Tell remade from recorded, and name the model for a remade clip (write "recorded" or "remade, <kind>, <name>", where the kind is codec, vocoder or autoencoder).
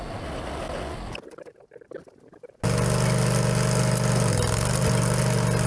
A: recorded